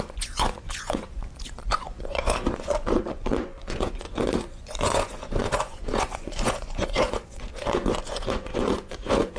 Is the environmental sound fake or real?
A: fake